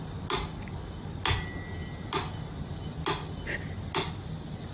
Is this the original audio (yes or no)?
yes